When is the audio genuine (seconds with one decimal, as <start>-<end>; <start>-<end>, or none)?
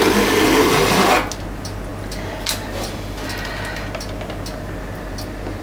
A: 0.0-5.6